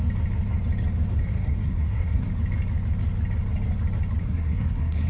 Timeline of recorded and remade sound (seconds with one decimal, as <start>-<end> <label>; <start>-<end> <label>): 0.0-1.2 recorded; 1.2-2.3 remade; 2.3-4.2 recorded; 4.2-5.1 remade